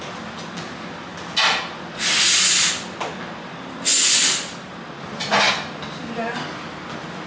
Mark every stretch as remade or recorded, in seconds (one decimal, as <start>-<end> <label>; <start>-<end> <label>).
0.0-7.3 recorded